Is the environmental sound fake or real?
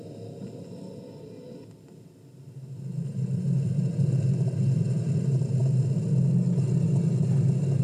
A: real